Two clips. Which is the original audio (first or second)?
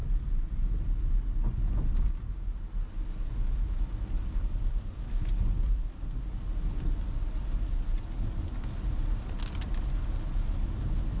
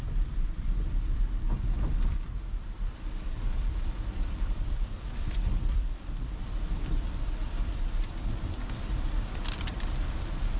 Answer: first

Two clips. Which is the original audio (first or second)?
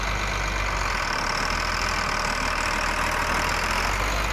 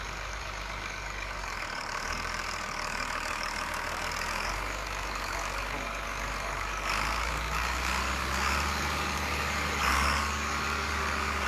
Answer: first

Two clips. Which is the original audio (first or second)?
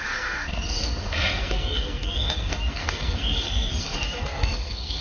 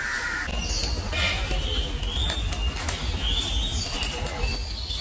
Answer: second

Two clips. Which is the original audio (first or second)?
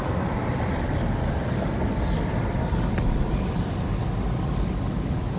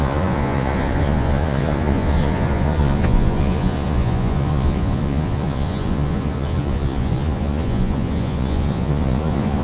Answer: first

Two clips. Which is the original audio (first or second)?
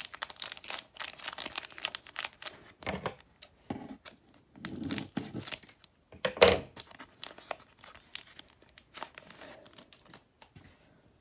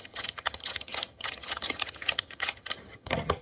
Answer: first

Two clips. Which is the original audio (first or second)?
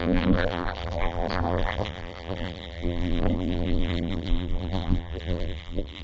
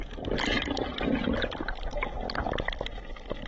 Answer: second